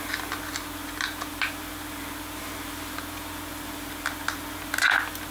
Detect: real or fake real